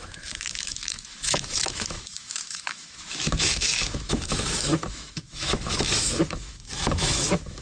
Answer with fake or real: fake